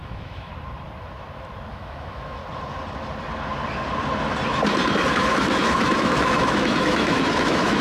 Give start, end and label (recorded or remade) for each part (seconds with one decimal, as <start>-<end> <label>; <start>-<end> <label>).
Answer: 0.0-0.5 remade; 0.5-1.7 recorded; 1.7-2.4 remade; 2.4-5.1 recorded; 5.1-7.8 remade